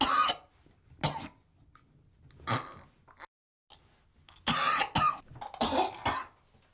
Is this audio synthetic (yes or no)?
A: no